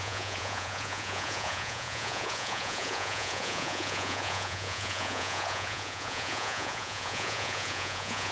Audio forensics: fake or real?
fake